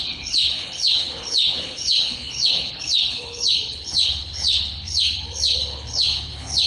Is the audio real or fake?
fake